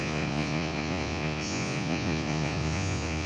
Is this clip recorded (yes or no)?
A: no